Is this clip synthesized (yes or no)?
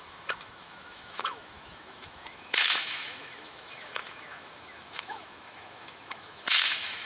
yes